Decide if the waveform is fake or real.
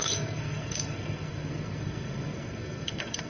fake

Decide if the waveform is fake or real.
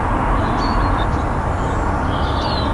real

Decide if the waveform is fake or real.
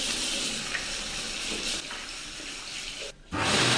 real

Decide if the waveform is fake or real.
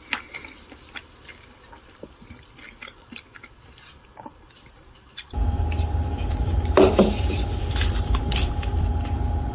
fake